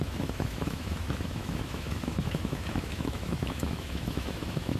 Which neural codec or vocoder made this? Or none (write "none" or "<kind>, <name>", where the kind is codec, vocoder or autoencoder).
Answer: autoencoder, DAC-VAE